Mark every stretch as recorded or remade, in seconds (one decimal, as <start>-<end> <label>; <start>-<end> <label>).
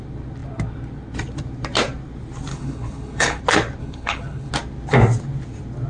0.0-2.5 recorded; 2.5-3.4 remade; 3.4-3.8 recorded; 3.8-4.5 remade; 4.5-5.9 recorded